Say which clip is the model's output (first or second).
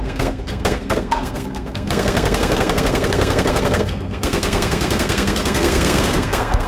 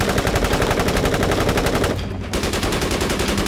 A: first